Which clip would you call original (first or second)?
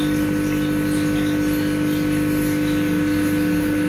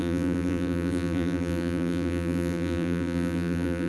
first